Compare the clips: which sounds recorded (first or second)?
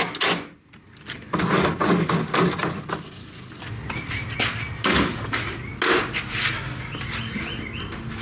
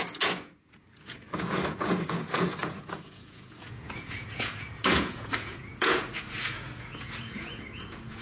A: first